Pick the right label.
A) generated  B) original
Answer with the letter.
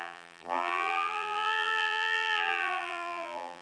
A